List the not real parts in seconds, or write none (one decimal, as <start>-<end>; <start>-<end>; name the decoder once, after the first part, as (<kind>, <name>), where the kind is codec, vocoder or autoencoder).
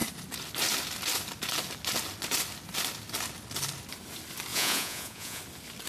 4.5-5.4 (vocoder, Vocos)